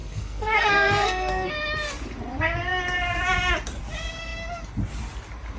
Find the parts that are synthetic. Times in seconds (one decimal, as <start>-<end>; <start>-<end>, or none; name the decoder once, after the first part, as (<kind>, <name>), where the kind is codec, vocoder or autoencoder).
0.0-1.5 (codec, SNAC)